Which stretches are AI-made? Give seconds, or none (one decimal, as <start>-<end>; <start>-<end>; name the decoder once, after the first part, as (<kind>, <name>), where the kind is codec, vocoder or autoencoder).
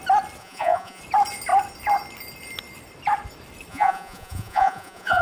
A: 0.4-1.0 (vocoder, Vocos); 3.7-5.2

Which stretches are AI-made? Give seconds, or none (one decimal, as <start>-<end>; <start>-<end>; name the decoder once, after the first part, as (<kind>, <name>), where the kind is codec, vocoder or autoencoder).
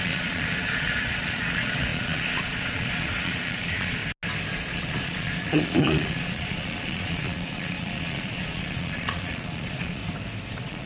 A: 0.0-4.0 (vocoder, Vocos); 4.5-10.0; 10.5-10.9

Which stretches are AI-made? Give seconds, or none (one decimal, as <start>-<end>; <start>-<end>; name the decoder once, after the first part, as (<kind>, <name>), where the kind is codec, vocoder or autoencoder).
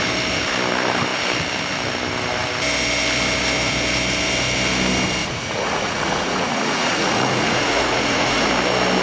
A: 5.2-8.5 (vocoder, Vocos)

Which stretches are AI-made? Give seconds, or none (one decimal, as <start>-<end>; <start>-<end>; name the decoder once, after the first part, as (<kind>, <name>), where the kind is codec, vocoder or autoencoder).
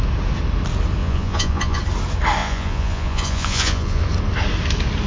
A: 1.0-1.8 (vocoder, Vocos); 2.4-4.0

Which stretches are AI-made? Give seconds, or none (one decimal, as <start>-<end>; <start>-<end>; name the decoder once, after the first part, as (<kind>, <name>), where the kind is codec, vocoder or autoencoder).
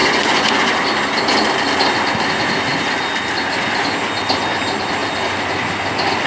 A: 0.0-0.6 (vocoder, Vocos)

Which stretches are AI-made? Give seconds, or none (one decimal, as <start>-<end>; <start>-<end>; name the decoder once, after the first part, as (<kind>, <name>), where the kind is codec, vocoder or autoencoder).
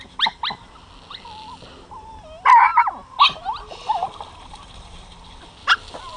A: none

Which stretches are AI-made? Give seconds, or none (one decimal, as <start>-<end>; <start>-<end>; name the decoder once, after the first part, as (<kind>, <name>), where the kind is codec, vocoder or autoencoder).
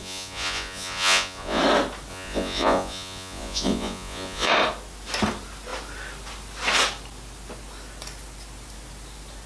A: 0.0-1.6 (vocoder, Vocos); 2.1-4.5